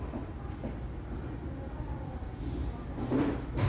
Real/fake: real